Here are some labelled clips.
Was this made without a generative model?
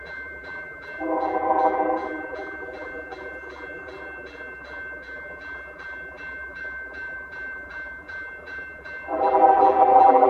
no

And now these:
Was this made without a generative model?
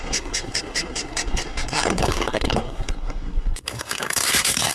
no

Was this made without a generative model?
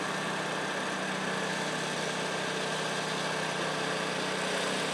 yes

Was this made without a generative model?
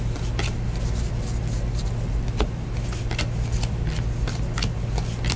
yes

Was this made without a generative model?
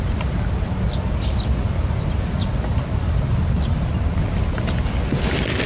yes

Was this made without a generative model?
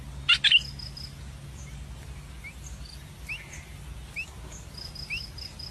yes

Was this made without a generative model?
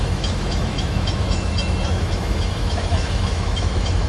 no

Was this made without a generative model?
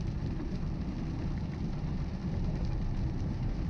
no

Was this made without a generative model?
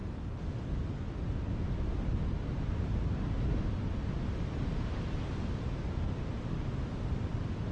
yes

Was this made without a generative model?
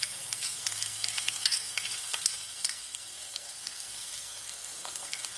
no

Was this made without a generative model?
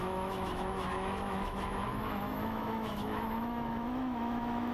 no